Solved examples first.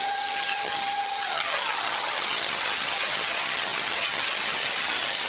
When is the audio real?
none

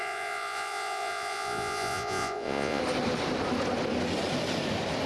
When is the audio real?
2.8-5.1

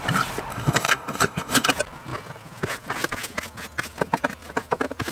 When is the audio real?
0.0-0.5; 1.7-5.1

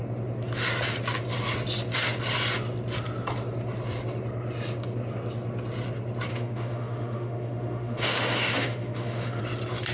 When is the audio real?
0.0-6.3; 9.4-9.9